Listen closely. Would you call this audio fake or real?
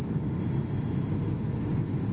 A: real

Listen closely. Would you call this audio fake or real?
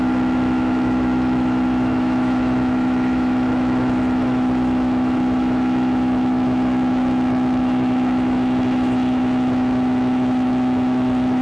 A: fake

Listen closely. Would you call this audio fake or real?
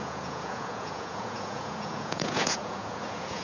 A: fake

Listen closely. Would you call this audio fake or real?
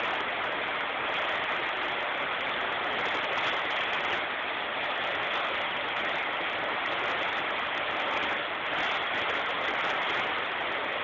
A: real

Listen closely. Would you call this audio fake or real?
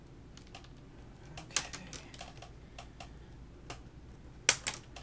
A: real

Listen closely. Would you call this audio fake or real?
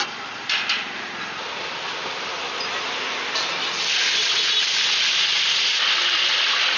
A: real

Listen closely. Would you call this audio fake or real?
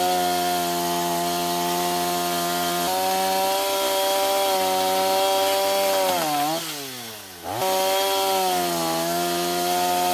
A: real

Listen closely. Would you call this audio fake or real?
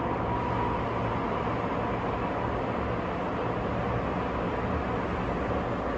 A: real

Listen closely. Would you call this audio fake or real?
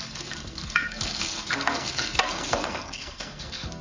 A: fake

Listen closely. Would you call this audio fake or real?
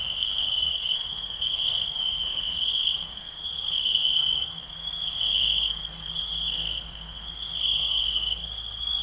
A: fake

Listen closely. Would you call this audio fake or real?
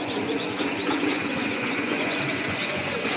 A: fake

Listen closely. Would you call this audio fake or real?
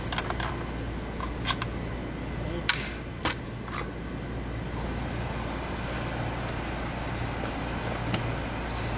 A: real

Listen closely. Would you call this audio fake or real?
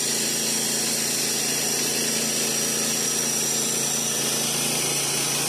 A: real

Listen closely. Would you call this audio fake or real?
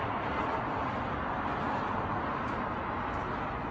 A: real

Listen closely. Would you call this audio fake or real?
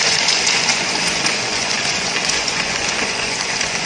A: fake